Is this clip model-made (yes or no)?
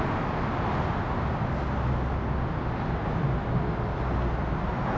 no